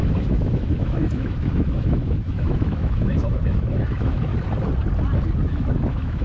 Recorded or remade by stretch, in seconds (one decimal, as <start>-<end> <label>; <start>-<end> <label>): 0.0-4.3 remade; 4.3-5.4 recorded; 5.4-6.2 remade